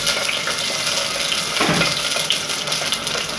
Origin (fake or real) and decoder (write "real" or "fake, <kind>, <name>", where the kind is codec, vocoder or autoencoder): real